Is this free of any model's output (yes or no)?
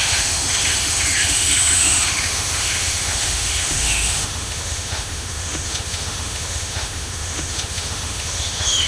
no